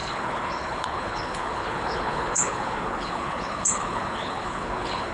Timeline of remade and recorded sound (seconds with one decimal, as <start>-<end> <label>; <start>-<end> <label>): 0.0-5.1 remade